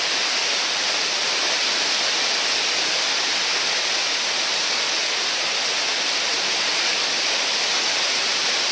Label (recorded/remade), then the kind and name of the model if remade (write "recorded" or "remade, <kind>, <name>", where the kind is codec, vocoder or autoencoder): recorded